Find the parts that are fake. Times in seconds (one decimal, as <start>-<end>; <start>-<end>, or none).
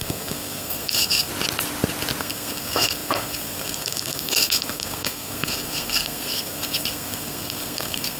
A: 0.0-1.3; 2.2-8.2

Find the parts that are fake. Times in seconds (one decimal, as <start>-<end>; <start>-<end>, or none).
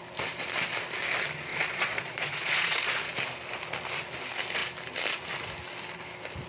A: 1.5-3.1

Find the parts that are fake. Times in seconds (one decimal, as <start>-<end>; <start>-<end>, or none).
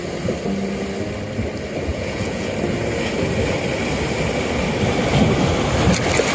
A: 1.9-2.5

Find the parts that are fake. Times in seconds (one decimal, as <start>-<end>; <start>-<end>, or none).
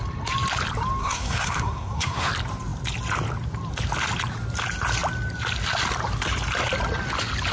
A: 1.0-2.3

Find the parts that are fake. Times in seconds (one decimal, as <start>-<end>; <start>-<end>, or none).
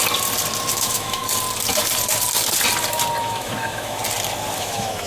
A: 0.7-1.2; 3.2-4.0; 4.6-5.1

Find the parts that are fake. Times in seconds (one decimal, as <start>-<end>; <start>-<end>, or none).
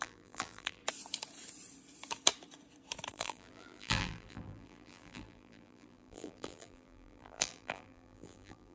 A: 0.0-0.8; 3.1-8.7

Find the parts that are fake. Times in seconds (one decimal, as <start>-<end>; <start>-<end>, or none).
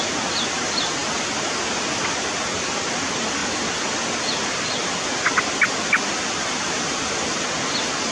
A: none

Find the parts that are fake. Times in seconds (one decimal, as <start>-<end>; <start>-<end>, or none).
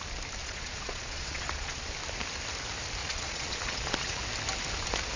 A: 0.4-1.9; 3.0-4.2